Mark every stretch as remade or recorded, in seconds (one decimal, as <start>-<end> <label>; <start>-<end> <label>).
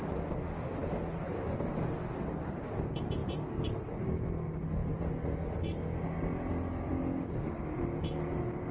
0.0-3.2 recorded; 3.2-3.9 remade; 3.9-8.7 recorded